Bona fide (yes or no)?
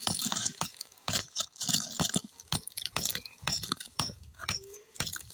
no